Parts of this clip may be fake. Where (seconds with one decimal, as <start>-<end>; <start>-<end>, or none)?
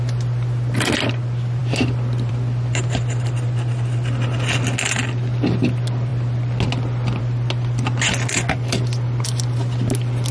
none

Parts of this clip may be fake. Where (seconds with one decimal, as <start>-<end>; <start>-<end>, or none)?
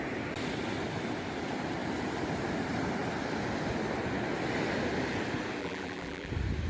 5.6-6.3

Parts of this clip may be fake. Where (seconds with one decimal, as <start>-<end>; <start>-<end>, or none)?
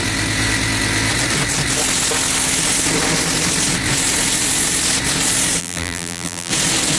5.6-6.5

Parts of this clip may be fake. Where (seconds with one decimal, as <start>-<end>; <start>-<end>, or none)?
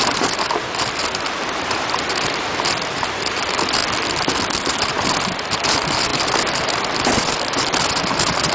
0.0-3.8; 4.6-8.5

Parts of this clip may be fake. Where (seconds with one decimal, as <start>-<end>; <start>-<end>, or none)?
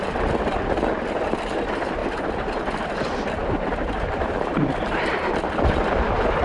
2.0-2.8; 3.4-5.3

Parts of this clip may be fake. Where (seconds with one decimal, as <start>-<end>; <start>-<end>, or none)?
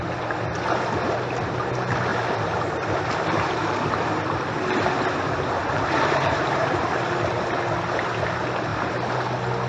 2.1-4.1; 5.6-6.7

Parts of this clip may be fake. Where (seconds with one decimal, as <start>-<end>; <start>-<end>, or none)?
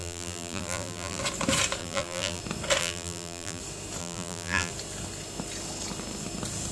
0.0-1.2; 1.8-2.4; 2.8-3.6; 4.0-4.7